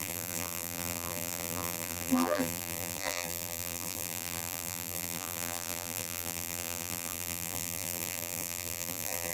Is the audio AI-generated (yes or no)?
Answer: yes